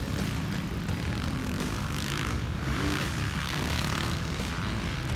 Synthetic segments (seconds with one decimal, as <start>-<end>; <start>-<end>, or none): 1.4-4.5